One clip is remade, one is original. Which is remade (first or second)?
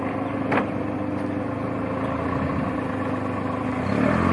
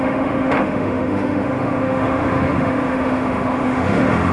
second